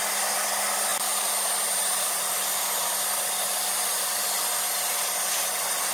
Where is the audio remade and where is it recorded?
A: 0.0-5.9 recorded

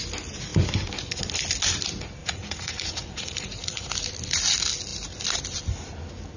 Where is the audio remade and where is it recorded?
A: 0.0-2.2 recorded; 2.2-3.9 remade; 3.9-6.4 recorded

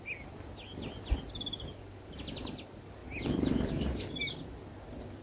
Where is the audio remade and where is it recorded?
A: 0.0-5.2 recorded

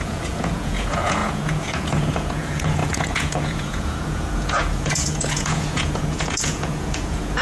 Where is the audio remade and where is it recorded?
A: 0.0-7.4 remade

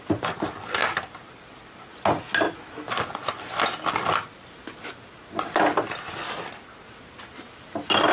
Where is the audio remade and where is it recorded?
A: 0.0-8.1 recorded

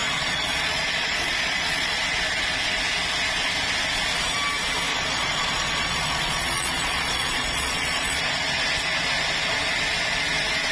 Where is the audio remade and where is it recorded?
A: 0.0-2.0 remade; 2.0-4.9 recorded; 4.9-8.2 remade; 8.2-10.7 recorded

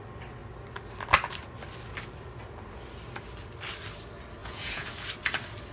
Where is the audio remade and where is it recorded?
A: 0.0-4.4 recorded; 4.4-4.9 remade; 4.9-5.7 recorded

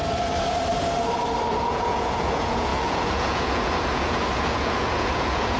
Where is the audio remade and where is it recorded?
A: 0.0-1.6 recorded; 1.6-5.6 remade